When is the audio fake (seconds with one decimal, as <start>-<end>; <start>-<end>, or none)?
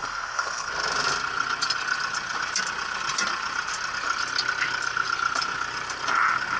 0.0-0.7